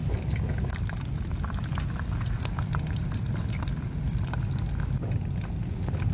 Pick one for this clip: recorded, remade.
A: recorded